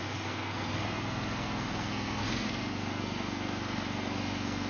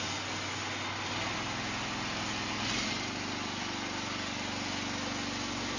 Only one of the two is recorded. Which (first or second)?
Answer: second